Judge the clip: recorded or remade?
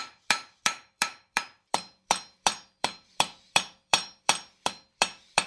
remade